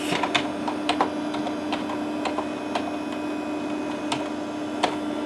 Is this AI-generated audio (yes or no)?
no